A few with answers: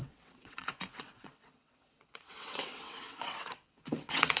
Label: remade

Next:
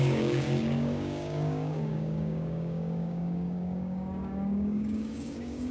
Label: remade